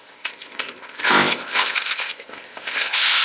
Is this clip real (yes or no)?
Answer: no